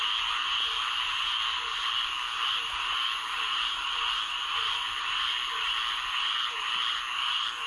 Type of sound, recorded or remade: recorded